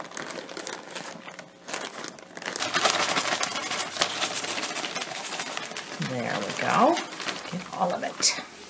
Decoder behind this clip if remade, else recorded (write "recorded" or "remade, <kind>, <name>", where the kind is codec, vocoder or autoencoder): recorded